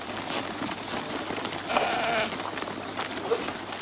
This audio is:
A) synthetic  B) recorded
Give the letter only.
B